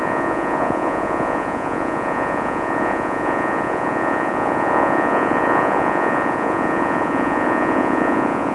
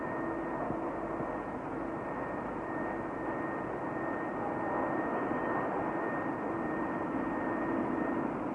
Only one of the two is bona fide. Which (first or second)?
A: second